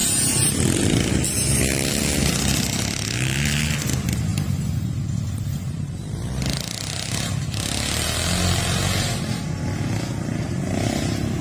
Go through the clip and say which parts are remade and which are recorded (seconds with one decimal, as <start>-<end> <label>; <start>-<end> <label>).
0.0-2.2 remade; 2.2-4.3 recorded; 4.3-7.4 remade; 7.4-11.4 recorded

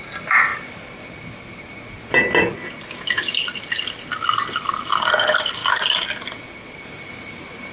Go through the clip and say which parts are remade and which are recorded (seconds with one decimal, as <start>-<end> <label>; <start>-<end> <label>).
0.0-7.7 recorded

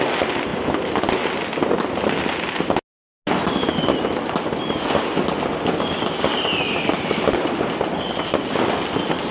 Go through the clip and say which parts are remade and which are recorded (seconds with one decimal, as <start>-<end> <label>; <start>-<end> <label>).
0.0-9.3 recorded